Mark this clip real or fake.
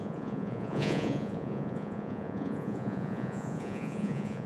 fake